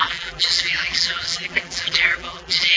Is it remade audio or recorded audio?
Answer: remade